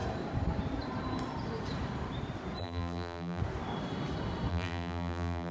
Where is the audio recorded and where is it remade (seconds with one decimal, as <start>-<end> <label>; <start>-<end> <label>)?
0.0-2.6 recorded; 2.6-3.4 remade; 3.4-4.5 recorded; 4.5-5.5 remade